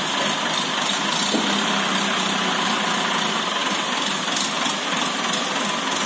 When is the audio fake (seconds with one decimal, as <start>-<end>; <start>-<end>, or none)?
none